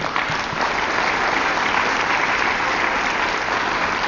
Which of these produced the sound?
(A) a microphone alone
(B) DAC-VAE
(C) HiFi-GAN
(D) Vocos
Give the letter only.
A